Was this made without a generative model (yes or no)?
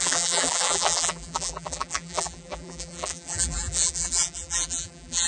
no